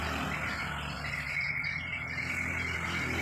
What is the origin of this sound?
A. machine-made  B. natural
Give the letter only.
B